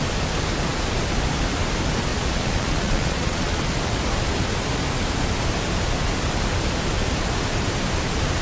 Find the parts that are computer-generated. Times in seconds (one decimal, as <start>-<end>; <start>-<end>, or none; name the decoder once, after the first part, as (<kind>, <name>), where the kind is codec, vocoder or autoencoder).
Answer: 2.1-3.6 (vocoder, Vocos)